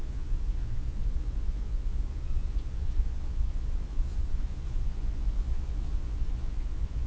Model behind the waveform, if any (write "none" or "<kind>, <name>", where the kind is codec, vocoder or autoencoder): vocoder, Vocos